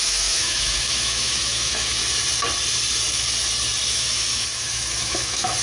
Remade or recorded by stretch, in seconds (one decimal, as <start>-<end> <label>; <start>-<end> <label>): 0.0-2.0 remade; 2.0-3.9 recorded; 3.9-5.6 remade

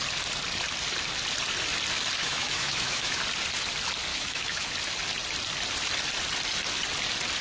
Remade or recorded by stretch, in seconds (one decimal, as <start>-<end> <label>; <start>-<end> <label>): 0.0-2.2 recorded; 2.2-3.2 remade; 3.2-4.1 recorded; 4.1-4.7 remade; 4.7-7.4 recorded